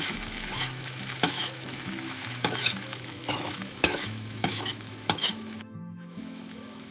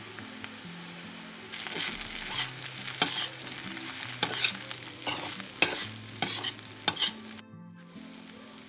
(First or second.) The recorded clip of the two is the second